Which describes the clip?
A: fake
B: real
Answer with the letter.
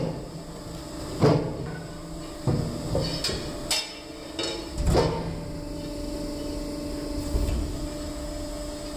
B